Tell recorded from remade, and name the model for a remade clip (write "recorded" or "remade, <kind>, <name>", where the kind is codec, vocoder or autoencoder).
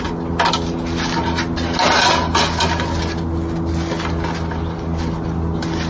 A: recorded